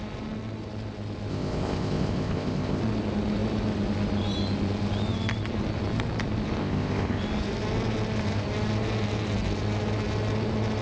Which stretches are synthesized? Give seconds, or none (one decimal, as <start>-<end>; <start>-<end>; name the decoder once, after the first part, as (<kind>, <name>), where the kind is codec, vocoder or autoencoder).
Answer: 1.3-2.8 (codec, ZipCodec); 6.6-7.2